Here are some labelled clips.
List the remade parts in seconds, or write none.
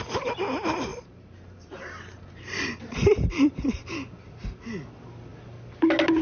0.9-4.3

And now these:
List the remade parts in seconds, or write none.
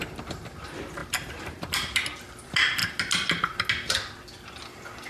1.0-1.7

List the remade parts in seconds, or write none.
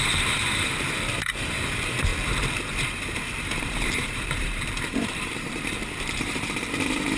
0.0-2.1; 3.0-7.2